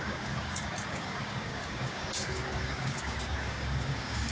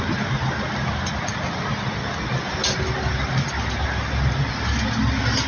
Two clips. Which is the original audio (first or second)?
second